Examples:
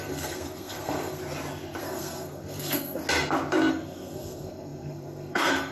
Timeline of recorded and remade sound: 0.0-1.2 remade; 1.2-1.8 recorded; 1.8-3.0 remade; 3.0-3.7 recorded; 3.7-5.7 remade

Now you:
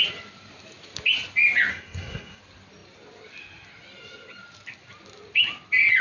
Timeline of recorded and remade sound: 0.0-1.7 recorded; 1.7-2.4 remade; 2.4-6.0 recorded

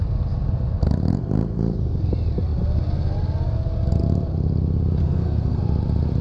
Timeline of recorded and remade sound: 0.0-5.0 recorded; 5.0-5.6 remade; 5.6-6.2 recorded

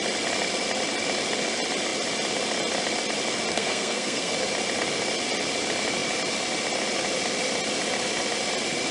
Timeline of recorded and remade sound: 0.0-3.5 recorded; 3.5-4.3 remade; 4.3-8.9 recorded

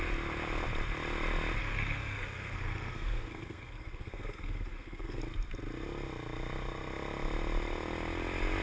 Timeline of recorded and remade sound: 0.0-1.6 recorded; 1.6-5.2 remade; 5.2-8.6 recorded

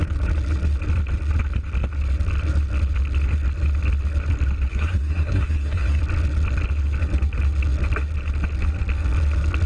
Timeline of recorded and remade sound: 0.0-4.7 recorded; 4.7-6.0 remade; 6.0-9.7 recorded

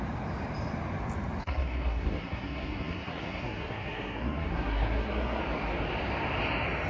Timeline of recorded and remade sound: 0.0-1.4 recorded; 1.4-5.4 remade; 5.4-6.9 recorded